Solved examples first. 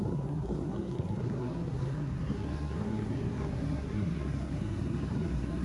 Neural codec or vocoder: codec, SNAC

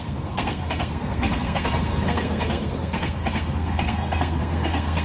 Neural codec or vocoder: codec, SNAC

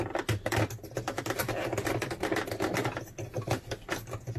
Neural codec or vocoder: none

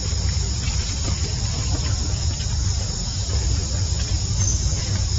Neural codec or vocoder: vocoder, BigVGAN v2